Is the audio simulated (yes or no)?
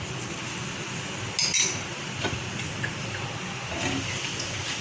no